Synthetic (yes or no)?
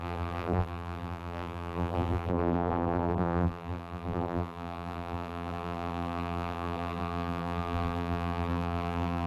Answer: yes